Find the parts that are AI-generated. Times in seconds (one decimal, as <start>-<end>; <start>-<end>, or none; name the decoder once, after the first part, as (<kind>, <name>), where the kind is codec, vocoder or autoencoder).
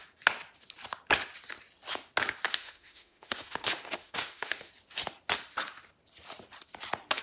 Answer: 2.5-4.7 (autoencoder, DAC-VAE)